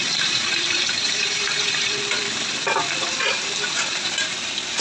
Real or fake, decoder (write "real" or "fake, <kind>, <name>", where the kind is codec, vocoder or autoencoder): fake, vocoder, BigVGAN v2